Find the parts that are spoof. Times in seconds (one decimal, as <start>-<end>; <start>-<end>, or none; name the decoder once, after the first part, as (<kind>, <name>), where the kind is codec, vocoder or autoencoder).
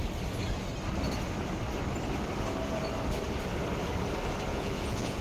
4.5-5.2 (vocoder, Vocos)